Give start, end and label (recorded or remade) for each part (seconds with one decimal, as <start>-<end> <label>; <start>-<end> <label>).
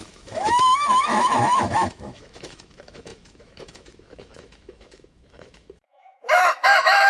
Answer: 0.0-7.1 remade